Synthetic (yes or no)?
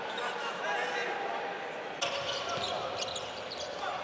no